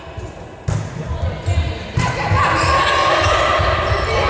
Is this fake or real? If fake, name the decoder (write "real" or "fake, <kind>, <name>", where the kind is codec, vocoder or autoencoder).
real